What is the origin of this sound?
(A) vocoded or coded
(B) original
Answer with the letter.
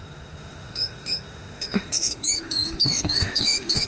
A